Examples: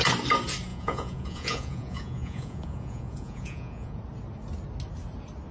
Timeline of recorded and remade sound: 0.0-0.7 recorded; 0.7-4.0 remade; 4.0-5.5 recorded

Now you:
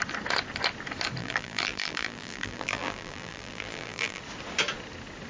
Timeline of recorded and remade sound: 0.0-1.2 recorded; 1.2-4.2 remade; 4.2-5.3 recorded

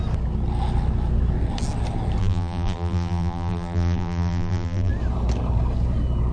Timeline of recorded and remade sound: 0.0-2.2 recorded; 2.2-4.9 remade; 4.9-6.3 recorded